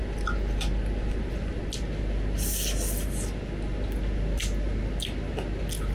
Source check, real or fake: real